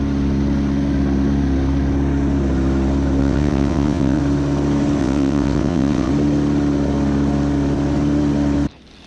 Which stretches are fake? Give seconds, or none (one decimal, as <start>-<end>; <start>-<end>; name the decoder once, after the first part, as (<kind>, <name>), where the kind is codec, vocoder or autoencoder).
3.2-4.2 (vocoder, WaveNeXt); 5.0-6.1